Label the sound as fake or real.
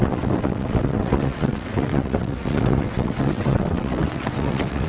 fake